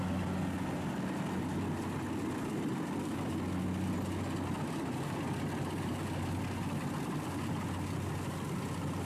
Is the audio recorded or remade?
recorded